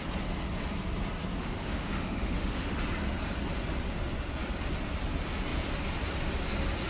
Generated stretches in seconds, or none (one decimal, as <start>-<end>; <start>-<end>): 1.4-2.8